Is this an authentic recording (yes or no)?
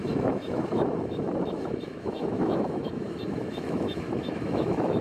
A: no